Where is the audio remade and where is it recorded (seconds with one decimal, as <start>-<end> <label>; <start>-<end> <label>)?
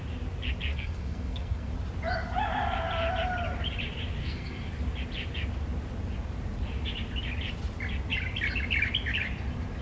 0.0-0.7 recorded; 0.7-1.7 remade; 1.7-4.2 recorded; 4.2-4.7 remade; 4.7-9.8 recorded